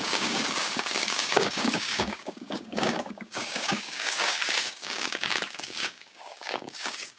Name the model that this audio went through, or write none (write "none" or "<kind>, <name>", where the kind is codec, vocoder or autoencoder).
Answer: codec, DAC